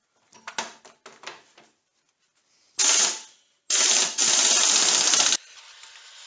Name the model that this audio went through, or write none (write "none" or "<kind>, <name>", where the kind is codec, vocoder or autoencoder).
none